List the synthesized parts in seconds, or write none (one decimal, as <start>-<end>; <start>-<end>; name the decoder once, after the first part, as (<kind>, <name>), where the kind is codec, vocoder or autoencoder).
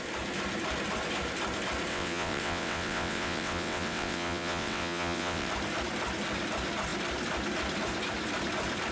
1.9-5.5 (vocoder, WaveNeXt)